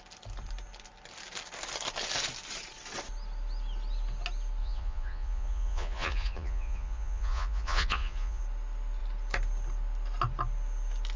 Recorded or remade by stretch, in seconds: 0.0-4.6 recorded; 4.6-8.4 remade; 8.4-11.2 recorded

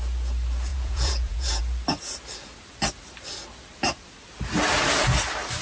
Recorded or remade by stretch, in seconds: 0.0-0.7 recorded; 0.7-1.6 remade; 1.6-5.6 recorded

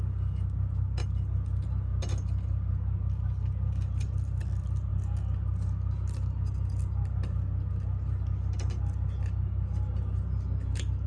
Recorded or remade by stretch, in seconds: 0.0-11.1 recorded

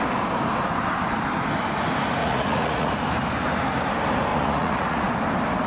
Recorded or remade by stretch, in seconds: 0.0-2.2 recorded; 2.2-2.9 remade; 2.9-4.3 recorded; 4.3-5.1 remade; 5.1-5.7 recorded

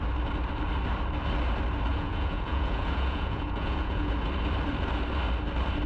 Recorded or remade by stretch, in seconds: 0.0-1.9 recorded; 1.9-4.1 remade; 4.1-5.9 recorded

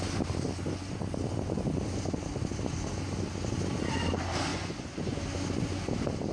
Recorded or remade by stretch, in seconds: 0.0-4.5 recorded; 4.5-5.2 remade; 5.2-6.3 recorded

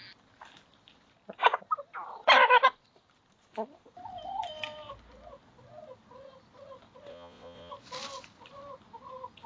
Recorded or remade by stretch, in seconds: 0.0-7.1 recorded; 7.1-7.7 remade; 7.7-9.5 recorded